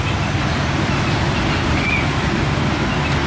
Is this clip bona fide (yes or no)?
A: yes